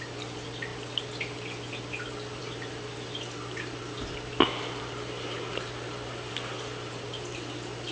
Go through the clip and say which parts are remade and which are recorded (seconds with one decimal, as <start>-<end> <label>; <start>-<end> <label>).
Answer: 0.0-7.9 recorded